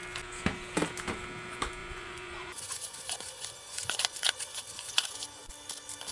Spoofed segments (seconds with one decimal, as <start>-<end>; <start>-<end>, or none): 1.8-5.5